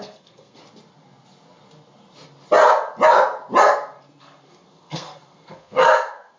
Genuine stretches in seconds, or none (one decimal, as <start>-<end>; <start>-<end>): 0.6-4.2